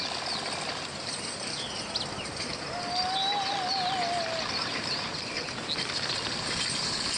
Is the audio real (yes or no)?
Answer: yes